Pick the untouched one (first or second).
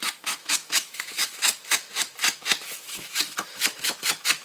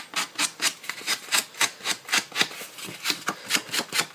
second